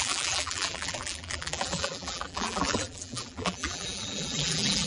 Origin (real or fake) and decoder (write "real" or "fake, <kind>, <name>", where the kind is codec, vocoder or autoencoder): fake, vocoder, BigVGAN v2